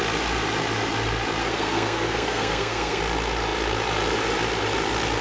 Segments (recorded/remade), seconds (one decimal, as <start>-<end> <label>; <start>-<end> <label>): 0.0-1.4 recorded; 1.4-3.0 remade; 3.0-5.2 recorded